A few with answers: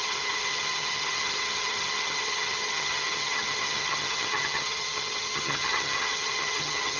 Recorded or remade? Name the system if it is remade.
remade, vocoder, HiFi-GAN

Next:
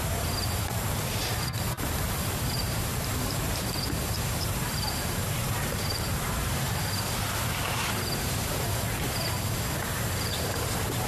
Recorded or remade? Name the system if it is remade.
remade, vocoder, BigVGAN v2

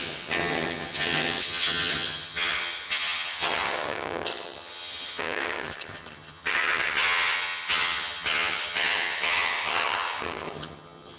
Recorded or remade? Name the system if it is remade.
remade, vocoder, HiFi-GAN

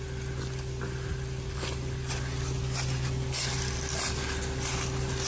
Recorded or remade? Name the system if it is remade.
recorded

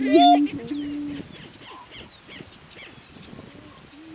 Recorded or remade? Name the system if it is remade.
recorded